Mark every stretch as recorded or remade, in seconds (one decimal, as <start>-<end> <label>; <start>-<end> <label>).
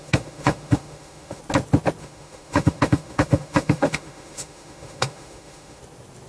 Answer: 0.0-1.4 remade; 1.4-2.0 recorded; 2.0-5.8 remade; 5.8-6.3 recorded